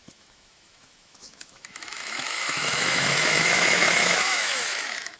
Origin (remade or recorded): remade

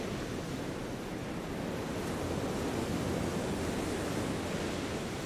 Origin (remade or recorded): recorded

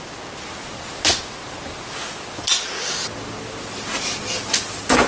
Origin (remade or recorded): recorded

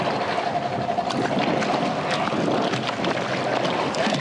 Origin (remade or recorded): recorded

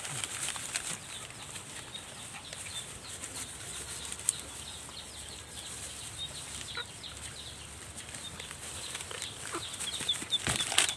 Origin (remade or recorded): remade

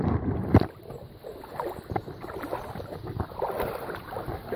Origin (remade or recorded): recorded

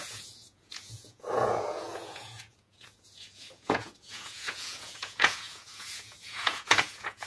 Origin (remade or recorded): remade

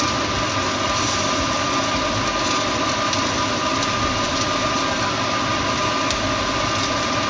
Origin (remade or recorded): recorded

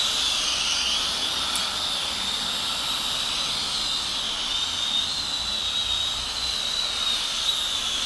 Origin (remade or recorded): recorded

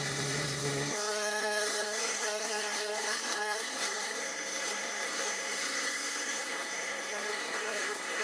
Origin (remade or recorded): remade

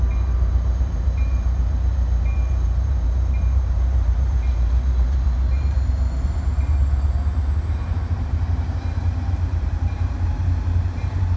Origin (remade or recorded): remade